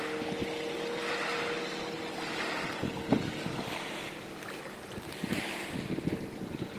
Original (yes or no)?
yes